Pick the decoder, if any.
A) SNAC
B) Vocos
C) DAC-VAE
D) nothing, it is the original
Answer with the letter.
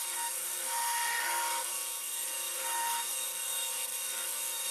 A